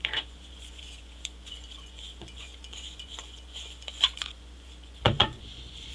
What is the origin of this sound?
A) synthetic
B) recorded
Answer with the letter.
A